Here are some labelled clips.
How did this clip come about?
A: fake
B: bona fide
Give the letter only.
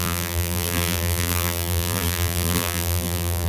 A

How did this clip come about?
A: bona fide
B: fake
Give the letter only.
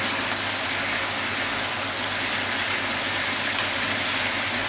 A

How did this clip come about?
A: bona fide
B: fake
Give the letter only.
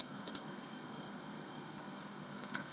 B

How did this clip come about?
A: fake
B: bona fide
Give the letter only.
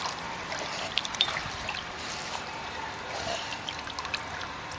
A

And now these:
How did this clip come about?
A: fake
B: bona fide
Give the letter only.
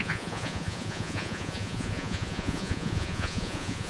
A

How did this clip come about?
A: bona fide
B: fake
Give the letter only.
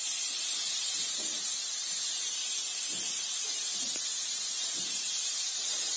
B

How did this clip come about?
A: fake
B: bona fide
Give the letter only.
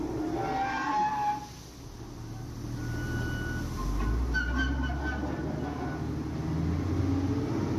B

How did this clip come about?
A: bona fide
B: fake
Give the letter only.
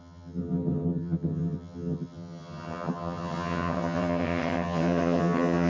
B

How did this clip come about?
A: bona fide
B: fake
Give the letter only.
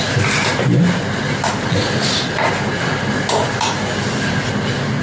A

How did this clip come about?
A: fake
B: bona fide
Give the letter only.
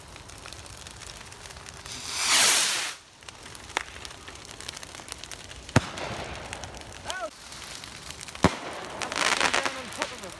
B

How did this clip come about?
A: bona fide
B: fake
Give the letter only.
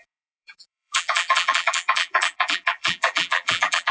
B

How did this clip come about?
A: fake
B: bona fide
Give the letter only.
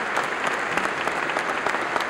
B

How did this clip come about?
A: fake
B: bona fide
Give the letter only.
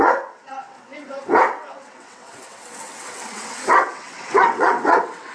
A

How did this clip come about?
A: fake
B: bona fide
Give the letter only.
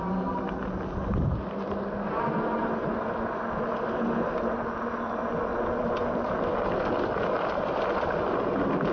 B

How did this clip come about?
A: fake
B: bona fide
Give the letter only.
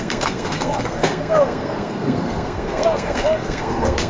A